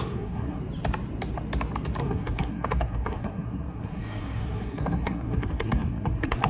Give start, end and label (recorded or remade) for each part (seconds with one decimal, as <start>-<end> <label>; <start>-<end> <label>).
0.0-0.6 remade; 0.6-2.0 recorded; 2.0-6.5 remade